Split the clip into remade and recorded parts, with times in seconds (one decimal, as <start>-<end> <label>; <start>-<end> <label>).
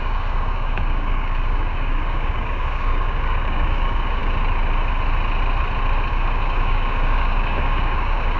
0.0-4.2 remade; 4.2-6.1 recorded; 6.1-8.4 remade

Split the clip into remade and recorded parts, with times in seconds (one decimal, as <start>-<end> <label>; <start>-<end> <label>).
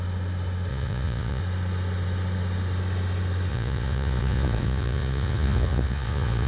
0.0-0.7 recorded; 0.7-1.4 remade; 1.4-3.5 recorded; 3.5-6.5 remade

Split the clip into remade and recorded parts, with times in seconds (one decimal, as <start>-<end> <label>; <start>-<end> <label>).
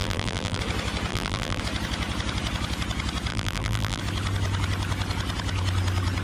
0.0-0.6 remade; 0.6-1.1 recorded; 1.1-1.6 remade; 1.6-3.3 recorded; 3.3-4.0 remade; 4.0-6.2 recorded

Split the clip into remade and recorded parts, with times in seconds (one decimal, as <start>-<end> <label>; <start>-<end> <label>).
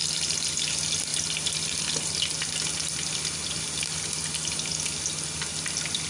0.0-0.5 remade; 0.5-1.1 recorded; 1.1-1.8 remade; 1.8-6.1 recorded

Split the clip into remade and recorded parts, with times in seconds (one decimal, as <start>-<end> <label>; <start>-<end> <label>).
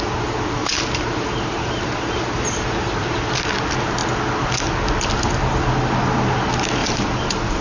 0.0-0.6 recorded; 0.6-3.0 remade; 3.0-6.8 recorded; 6.8-7.6 remade